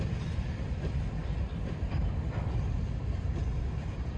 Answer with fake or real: fake